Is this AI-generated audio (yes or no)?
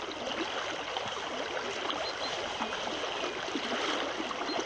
no